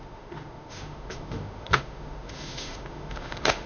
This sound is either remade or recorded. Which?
remade